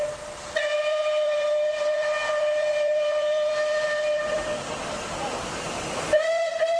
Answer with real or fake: fake